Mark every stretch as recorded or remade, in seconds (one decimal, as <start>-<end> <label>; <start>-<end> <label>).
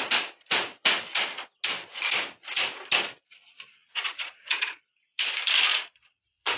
0.0-3.8 recorded; 3.8-4.8 remade; 4.8-5.7 recorded; 5.7-6.6 remade